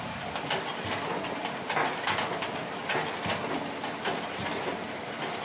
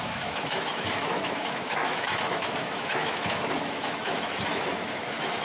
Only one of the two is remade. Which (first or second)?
second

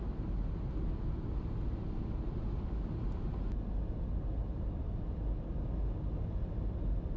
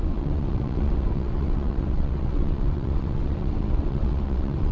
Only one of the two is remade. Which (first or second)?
second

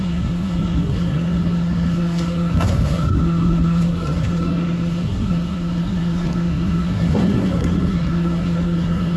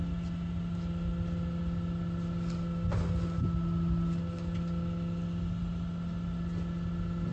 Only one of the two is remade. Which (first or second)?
first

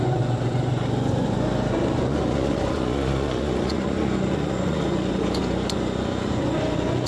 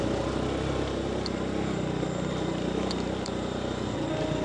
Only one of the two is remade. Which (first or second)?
first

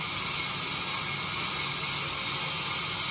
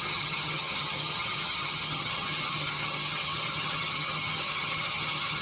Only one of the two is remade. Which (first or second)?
second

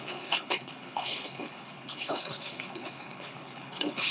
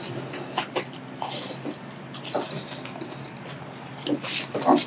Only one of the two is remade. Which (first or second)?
first